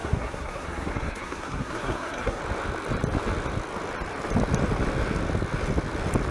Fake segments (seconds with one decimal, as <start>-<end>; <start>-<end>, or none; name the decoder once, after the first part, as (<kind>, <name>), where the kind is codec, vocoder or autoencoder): 0.0-2.4 (codec, SNAC)